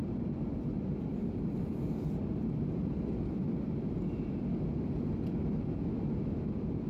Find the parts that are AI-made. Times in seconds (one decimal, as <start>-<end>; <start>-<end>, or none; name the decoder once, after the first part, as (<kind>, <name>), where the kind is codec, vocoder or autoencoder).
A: none